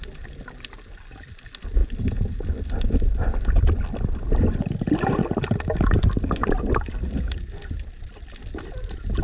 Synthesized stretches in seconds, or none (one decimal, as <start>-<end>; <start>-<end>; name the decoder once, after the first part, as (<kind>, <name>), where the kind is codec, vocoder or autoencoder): none